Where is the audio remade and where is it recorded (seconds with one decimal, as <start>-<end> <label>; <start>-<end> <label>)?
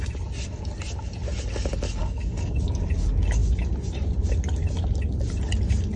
0.0-2.0 recorded; 2.0-2.8 remade; 2.8-6.0 recorded